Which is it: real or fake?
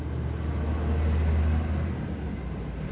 real